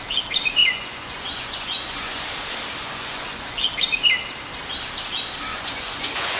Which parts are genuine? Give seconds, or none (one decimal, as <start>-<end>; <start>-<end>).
0.0-0.6; 2.2-2.8; 3.6-5.5